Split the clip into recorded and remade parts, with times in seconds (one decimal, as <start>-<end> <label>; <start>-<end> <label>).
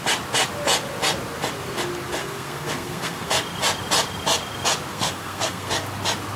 0.0-2.2 recorded; 2.2-3.3 remade; 3.3-4.9 recorded; 4.9-5.7 remade; 5.7-6.4 recorded